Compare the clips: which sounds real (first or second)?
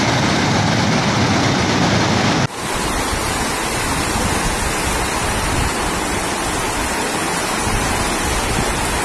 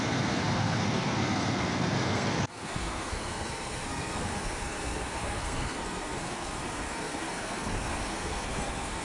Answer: first